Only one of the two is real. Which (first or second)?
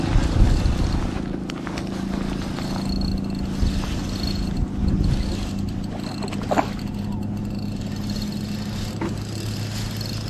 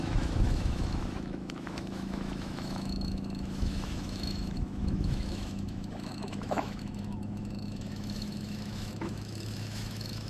first